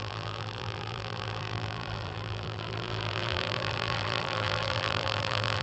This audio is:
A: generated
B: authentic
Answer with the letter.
A